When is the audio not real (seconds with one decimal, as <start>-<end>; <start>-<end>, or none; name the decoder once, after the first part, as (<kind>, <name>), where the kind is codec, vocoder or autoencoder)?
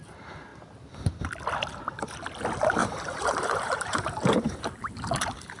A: 2.8-4.6 (vocoder, BigVGAN v2)